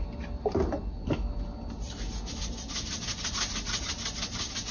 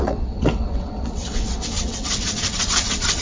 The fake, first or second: second